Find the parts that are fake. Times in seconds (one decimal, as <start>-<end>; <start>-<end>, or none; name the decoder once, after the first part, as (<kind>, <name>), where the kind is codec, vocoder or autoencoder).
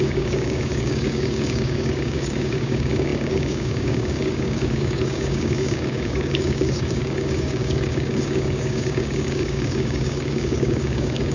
0.0-11.3 (codec, DAC)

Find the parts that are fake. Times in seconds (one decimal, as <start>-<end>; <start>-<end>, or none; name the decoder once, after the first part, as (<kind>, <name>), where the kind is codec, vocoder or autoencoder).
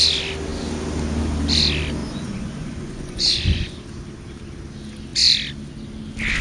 2.0-3.8 (vocoder, Vocos)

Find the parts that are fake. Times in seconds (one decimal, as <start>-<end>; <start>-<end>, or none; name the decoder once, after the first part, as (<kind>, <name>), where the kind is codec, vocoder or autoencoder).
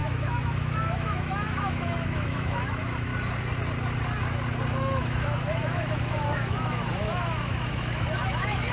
0.0-3.1 (autoencoder, DAC-VAE); 4.7-8.7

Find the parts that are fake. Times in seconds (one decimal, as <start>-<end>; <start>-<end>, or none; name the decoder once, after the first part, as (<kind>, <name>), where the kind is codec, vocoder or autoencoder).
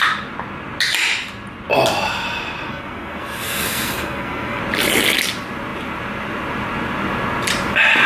2.7-4.6 (codec, SNAC)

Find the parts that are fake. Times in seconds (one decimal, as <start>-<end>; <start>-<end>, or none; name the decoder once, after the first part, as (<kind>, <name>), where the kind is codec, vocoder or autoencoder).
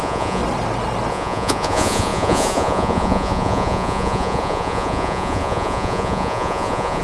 0.0-0.4 (vocoder, Vocos); 1.1-7.0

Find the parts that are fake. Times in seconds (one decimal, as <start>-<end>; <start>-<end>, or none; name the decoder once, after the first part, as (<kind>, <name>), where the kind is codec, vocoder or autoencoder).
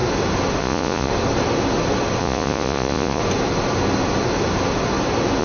0.6-1.1 (vocoder, Vocos); 2.2-3.2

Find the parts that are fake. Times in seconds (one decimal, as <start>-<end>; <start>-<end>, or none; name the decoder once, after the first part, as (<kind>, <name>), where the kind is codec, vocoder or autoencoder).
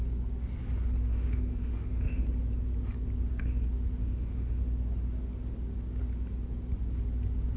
1.1-2.2 (autoencoder, DAC-VAE); 4.0-4.6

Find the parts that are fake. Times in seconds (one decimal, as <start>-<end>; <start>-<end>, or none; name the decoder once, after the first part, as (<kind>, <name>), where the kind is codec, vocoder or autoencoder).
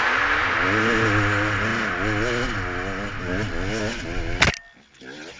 none